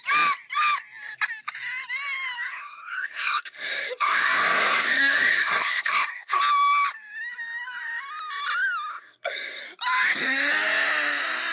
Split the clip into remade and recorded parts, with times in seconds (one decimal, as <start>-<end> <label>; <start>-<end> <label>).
0.0-2.5 recorded; 2.5-6.4 remade; 6.4-8.9 recorded; 8.9-9.6 remade; 9.6-11.5 recorded